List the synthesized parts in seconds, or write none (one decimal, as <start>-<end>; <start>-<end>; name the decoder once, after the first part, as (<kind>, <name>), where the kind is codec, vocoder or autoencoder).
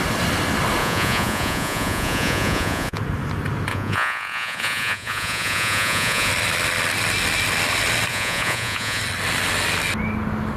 0.8-3.0 (vocoder, Vocos); 3.7-6.3; 8.1-9.0